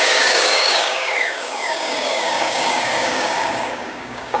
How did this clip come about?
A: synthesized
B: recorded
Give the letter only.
A